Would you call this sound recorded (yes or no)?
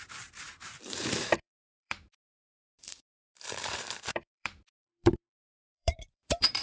no